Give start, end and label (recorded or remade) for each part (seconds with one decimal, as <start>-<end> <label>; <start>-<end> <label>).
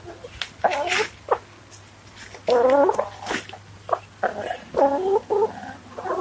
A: 0.0-6.2 recorded